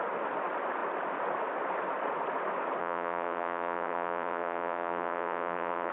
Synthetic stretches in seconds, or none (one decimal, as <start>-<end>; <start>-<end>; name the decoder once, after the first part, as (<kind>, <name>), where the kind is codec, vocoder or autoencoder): 2.8-5.9 (vocoder, WaveNeXt)